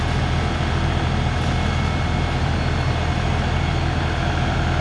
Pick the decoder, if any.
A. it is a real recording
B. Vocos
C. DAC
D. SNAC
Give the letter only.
A